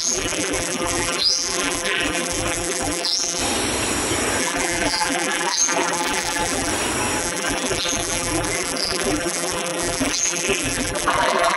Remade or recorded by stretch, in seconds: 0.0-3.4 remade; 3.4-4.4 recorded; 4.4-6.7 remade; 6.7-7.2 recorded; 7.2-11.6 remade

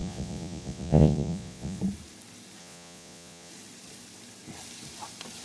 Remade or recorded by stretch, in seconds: 0.0-1.8 remade; 1.8-2.6 recorded; 2.6-3.5 remade; 3.5-5.4 recorded

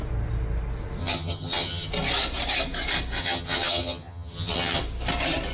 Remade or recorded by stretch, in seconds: 0.0-1.0 recorded; 1.0-1.9 remade; 1.9-3.2 recorded; 3.2-4.8 remade; 4.8-5.5 recorded

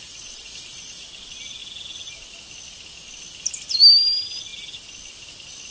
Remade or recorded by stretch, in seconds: 0.0-5.7 recorded

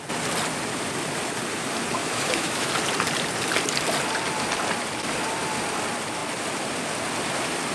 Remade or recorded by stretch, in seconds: 0.0-2.0 recorded; 2.0-2.7 remade; 2.7-7.7 recorded